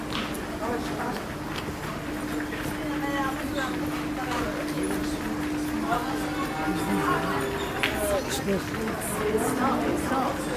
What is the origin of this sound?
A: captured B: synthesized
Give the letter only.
A